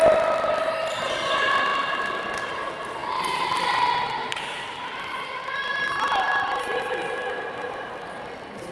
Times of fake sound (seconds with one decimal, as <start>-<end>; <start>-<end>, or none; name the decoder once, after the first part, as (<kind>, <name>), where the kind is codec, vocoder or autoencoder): 1.7-2.5 (vocoder, BigVGAN v2); 4.2-6.8